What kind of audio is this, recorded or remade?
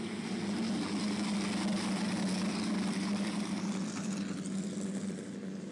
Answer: recorded